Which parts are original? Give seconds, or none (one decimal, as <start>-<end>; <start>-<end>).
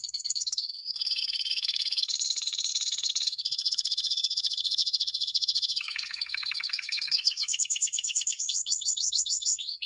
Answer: none